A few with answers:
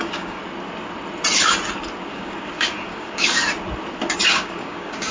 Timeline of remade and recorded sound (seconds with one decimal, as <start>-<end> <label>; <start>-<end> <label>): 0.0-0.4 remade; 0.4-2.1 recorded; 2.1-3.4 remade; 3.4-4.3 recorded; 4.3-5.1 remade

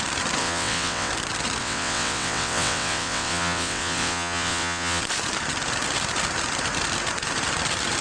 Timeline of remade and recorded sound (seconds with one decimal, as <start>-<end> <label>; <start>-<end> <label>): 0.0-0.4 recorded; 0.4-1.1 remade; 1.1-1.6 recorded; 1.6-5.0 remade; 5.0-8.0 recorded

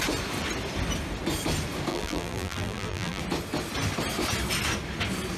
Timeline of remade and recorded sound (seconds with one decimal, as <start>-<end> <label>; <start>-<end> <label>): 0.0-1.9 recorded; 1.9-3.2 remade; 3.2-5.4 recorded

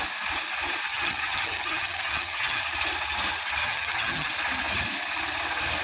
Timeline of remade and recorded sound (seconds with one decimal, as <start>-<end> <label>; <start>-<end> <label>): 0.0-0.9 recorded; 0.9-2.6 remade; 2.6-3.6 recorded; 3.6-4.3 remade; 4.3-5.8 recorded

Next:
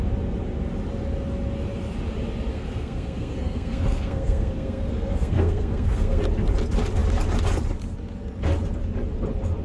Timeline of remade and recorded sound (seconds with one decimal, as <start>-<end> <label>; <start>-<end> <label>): 0.0-2.5 recorded; 2.5-6.2 remade; 6.2-9.6 recorded

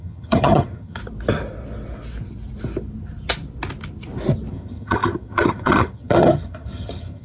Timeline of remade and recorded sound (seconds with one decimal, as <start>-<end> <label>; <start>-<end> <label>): 0.0-1.0 remade; 1.0-4.5 recorded; 4.5-7.2 remade